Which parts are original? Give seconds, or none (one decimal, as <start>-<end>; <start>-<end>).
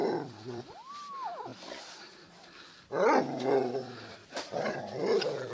0.9-1.5; 3.2-4.2; 4.8-5.5